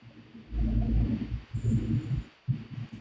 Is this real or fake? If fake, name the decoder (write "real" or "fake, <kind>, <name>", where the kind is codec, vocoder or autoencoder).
real